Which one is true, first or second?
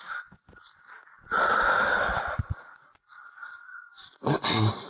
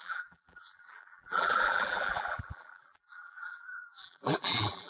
first